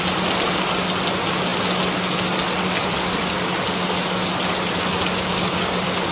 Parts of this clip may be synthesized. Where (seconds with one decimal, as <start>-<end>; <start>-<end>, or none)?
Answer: none